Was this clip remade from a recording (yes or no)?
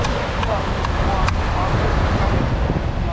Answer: no